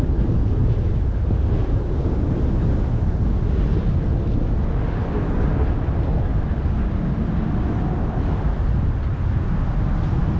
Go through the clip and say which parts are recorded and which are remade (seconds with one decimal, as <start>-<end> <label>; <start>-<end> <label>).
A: 0.0-10.4 recorded